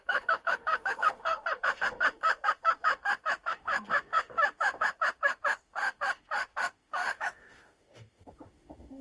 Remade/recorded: remade